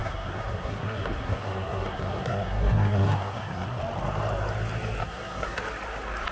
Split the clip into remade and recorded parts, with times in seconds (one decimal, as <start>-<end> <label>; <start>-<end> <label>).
0.0-3.8 remade; 3.8-5.0 recorded; 5.0-5.6 remade; 5.6-6.3 recorded